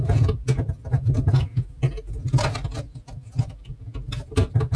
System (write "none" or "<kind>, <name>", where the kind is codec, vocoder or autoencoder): none